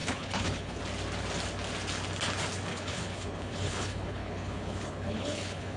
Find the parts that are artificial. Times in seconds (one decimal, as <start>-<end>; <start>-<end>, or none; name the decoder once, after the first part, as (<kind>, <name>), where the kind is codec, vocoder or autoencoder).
0.0-0.8 (codec, HILCodec); 2.7-5.8